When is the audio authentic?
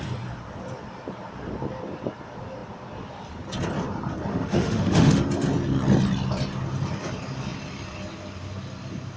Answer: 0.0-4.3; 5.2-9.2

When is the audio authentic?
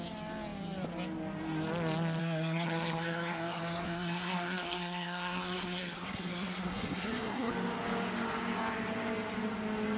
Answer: 0.0-2.2; 7.5-10.0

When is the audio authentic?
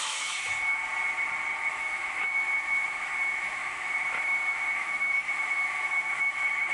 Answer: 0.8-1.7